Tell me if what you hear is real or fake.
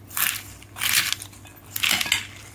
real